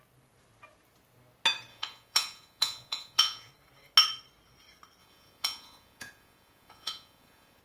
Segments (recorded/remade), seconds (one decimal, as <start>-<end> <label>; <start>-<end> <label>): 0.0-1.7 recorded; 1.7-3.5 remade; 3.5-5.0 recorded; 5.0-7.6 remade